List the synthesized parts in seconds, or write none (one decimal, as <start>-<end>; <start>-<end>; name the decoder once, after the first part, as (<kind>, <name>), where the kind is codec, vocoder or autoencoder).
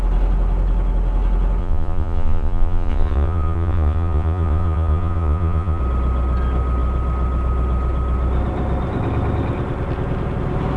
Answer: 1.6-5.8 (vocoder, Vocos)